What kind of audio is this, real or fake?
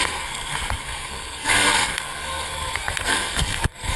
fake